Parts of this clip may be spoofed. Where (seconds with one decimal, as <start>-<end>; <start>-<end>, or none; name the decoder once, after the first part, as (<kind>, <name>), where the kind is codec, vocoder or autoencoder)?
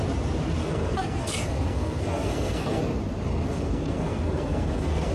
0.6-2.8 (codec, SNAC); 3.3-5.1